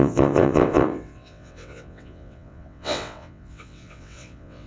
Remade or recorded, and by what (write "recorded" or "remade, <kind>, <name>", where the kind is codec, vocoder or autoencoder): remade, vocoder, WaveNeXt